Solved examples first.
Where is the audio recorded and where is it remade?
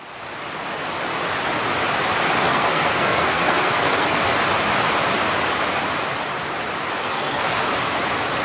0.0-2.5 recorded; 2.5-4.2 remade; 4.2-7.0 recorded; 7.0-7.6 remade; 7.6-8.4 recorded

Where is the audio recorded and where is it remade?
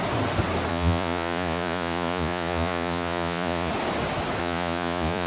0.0-0.7 recorded; 0.7-3.7 remade; 3.7-4.4 recorded; 4.4-5.3 remade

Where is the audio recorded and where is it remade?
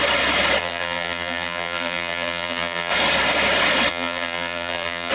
0.0-0.6 recorded; 0.6-2.9 remade; 2.9-3.9 recorded; 3.9-5.1 remade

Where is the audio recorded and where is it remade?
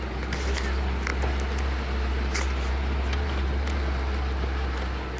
0.0-5.2 recorded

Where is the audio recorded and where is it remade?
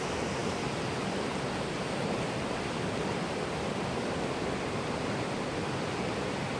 0.0-6.6 recorded